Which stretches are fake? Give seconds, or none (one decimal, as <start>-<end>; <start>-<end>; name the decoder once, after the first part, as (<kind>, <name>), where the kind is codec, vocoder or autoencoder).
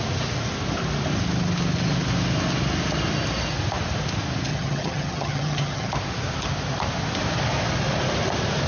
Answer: 4.5-5.9 (vocoder, HiFi-GAN)